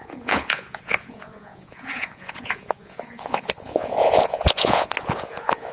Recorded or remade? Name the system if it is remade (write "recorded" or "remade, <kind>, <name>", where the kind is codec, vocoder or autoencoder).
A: remade, vocoder, Vocos